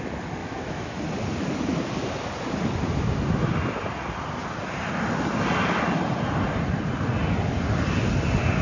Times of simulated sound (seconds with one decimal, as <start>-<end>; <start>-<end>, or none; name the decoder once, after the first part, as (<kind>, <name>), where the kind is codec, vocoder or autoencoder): 0.4-1.0 (autoencoder, DAC-VAE)